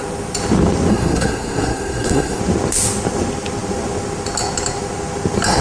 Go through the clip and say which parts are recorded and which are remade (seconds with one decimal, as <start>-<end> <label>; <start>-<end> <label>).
0.0-0.9 recorded; 0.9-2.4 remade; 2.4-5.6 recorded